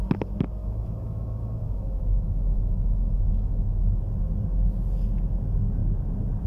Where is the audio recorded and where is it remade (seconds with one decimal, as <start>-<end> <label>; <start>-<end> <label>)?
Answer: 0.0-0.6 recorded; 0.6-4.0 remade; 4.0-6.5 recorded